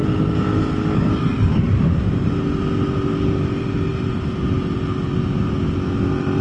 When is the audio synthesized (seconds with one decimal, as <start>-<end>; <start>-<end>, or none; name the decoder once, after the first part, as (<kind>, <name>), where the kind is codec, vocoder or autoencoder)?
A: 1.3-2.5 (vocoder, BigVGAN v2)